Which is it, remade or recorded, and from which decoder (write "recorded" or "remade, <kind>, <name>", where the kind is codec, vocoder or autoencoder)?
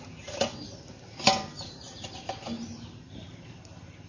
recorded